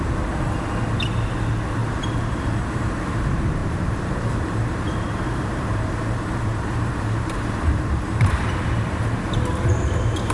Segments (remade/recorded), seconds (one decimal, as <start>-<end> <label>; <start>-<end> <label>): 0.0-1.8 recorded; 1.8-2.6 remade; 2.6-3.6 recorded; 3.6-8.5 remade; 8.5-10.3 recorded